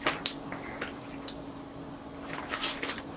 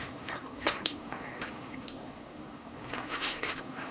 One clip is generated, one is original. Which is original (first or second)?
first